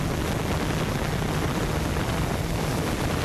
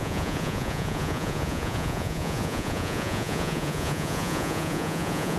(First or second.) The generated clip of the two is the second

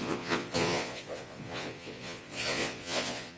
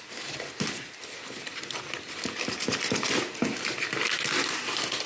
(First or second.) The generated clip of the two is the first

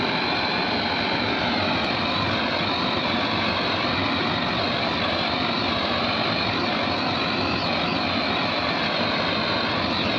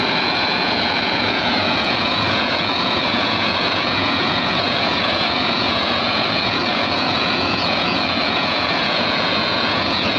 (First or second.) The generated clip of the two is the second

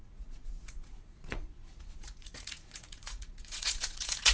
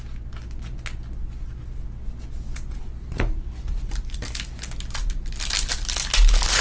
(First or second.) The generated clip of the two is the first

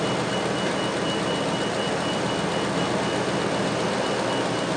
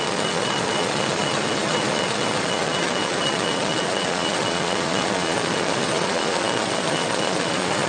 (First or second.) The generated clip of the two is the second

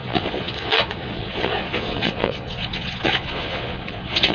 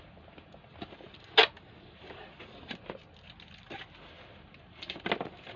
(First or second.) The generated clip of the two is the first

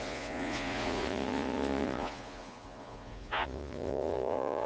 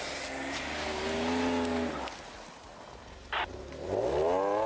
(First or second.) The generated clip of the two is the first